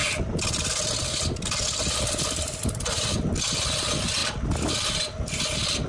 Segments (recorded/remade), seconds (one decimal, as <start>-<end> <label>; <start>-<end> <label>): 0.0-5.9 recorded